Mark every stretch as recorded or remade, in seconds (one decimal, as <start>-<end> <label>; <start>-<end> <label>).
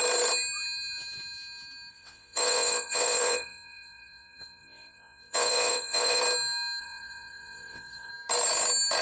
0.0-1.9 recorded; 1.9-6.2 remade; 6.2-6.8 recorded; 6.8-8.1 remade; 8.1-9.0 recorded